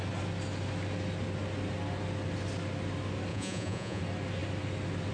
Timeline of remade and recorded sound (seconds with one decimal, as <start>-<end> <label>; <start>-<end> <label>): 0.0-3.3 recorded; 3.3-4.0 remade; 4.0-5.1 recorded